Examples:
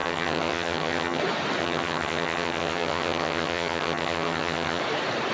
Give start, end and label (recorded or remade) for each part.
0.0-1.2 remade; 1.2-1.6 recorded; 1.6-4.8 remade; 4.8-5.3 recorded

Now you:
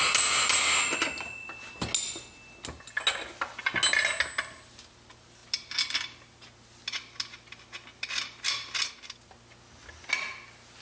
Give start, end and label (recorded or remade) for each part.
0.0-10.8 recorded

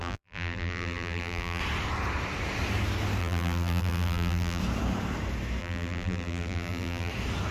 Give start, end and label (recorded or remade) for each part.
0.0-1.6 remade; 1.6-3.2 recorded; 3.2-4.6 remade; 4.6-5.6 recorded; 5.6-7.1 remade; 7.1-7.5 recorded

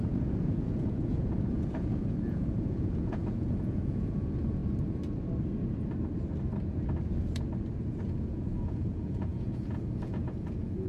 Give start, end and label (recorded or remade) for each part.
0.0-4.6 remade; 4.6-8.0 recorded; 8.0-10.9 remade

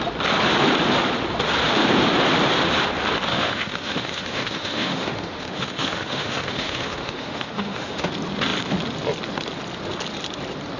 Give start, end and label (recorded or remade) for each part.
0.0-3.3 recorded; 3.3-8.1 remade; 8.1-10.8 recorded

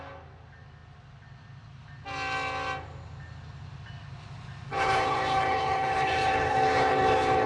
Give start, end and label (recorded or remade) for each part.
0.0-4.7 recorded; 4.7-7.5 remade